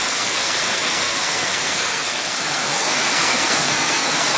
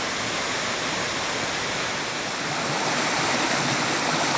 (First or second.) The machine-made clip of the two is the first